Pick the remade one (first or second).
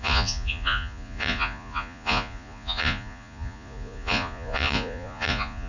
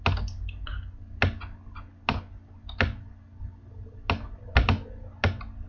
first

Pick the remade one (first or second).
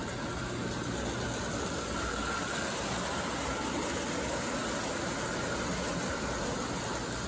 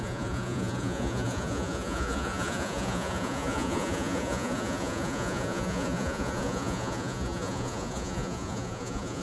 second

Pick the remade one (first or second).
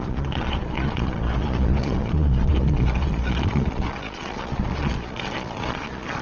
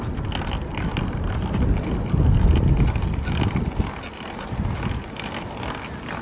first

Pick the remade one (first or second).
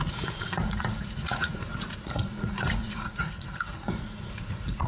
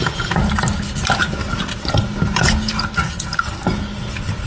first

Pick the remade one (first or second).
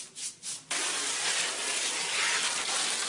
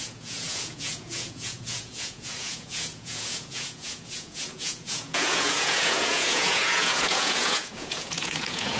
second